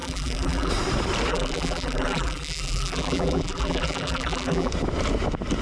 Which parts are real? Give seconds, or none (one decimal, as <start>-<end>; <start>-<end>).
0.7-1.3; 4.7-5.6